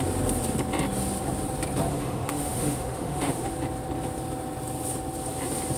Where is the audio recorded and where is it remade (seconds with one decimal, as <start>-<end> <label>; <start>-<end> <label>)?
0.0-1.9 recorded; 1.9-3.5 remade; 3.5-5.8 recorded